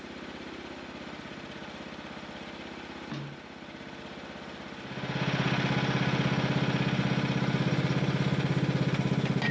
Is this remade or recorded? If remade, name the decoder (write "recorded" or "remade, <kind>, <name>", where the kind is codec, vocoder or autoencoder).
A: recorded